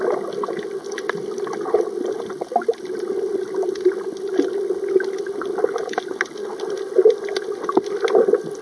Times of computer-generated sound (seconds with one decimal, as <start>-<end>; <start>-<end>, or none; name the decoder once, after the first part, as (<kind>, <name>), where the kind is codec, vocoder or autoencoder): none